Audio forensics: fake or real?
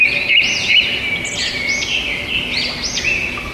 real